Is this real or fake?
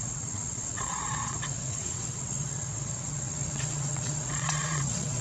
fake